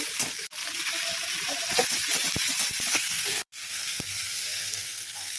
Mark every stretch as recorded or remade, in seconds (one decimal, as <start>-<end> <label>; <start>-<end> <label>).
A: 0.0-2.9 recorded; 2.9-5.4 remade

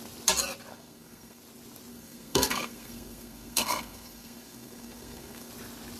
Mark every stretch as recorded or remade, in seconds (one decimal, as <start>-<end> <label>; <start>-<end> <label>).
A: 0.0-0.7 recorded; 0.7-1.4 remade; 1.4-1.9 recorded; 1.9-5.5 remade; 5.5-6.0 recorded

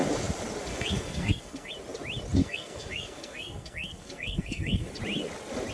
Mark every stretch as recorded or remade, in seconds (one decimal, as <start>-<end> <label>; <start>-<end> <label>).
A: 0.0-0.7 recorded; 0.7-1.7 remade; 1.7-2.4 recorded; 2.4-4.9 remade; 4.9-5.7 recorded

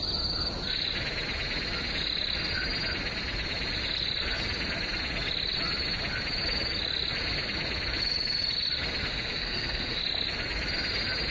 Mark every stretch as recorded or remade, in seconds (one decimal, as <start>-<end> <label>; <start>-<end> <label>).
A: 0.0-9.1 recorded; 9.1-10.0 remade; 10.0-11.3 recorded